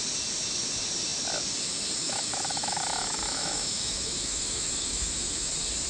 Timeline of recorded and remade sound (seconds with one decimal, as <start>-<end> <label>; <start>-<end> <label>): 0.0-2.0 recorded; 2.0-5.5 remade; 5.5-5.9 recorded